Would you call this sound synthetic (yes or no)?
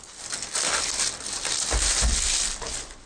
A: no